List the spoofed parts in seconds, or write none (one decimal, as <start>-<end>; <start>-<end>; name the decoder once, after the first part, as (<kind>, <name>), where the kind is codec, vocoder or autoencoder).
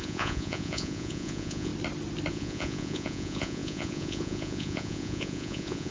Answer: 0.0-1.7 (vocoder, Vocos); 2.3-5.9